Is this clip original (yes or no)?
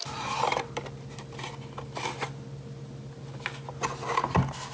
yes